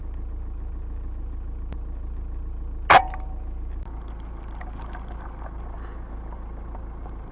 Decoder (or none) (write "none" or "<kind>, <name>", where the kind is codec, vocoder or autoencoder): none